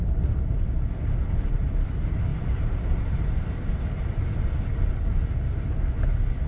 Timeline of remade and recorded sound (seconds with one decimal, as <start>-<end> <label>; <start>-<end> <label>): 0.0-2.3 recorded; 2.3-4.9 remade; 4.9-6.5 recorded